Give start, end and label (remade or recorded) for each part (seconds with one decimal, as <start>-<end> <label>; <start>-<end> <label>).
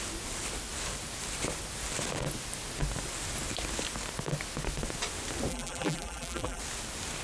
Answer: 0.0-5.5 recorded; 5.5-6.6 remade; 6.6-7.2 recorded